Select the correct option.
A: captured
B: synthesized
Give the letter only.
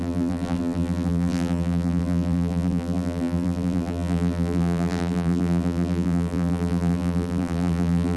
B